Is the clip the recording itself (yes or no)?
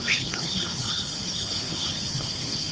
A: no